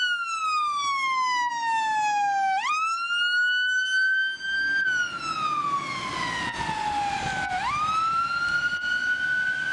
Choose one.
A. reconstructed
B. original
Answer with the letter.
B